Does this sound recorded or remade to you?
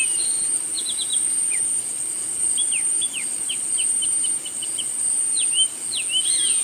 remade